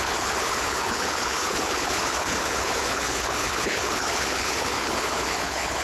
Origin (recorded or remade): remade